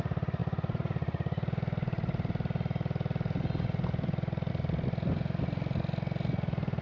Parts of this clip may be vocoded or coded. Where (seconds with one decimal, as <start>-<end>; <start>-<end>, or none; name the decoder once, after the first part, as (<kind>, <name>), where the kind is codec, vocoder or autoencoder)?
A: none